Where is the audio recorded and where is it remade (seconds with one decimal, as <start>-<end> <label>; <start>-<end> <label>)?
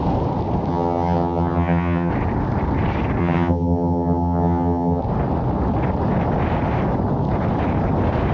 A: 0.0-0.7 recorded; 0.7-2.1 remade; 2.1-3.2 recorded; 3.2-5.0 remade; 5.0-8.3 recorded